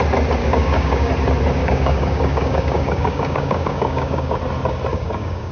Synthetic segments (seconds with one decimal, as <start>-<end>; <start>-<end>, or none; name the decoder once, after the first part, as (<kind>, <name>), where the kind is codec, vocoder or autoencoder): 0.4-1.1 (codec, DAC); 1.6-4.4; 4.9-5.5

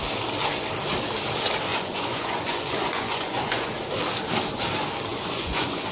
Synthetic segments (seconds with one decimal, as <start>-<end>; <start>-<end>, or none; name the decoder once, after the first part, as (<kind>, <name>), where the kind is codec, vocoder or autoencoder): 1.7-3.7 (vocoder, Vocos); 5.1-5.9

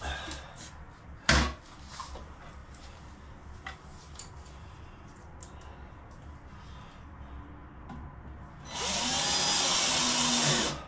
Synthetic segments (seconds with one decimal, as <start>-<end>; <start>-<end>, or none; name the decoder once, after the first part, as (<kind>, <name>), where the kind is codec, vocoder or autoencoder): 2.6-3.4 (vocoder, BigVGAN v2); 4.6-5.3; 7.6-8.6

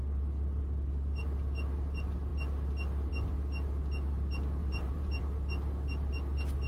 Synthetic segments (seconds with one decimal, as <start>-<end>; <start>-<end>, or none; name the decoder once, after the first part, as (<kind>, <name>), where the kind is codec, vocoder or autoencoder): 4.6-5.2 (vocoder, BigVGAN v2)

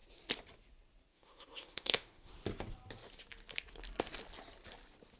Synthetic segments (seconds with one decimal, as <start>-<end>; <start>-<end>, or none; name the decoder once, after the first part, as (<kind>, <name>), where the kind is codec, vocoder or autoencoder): 1.1-2.3 (autoencoder, DAC-VAE)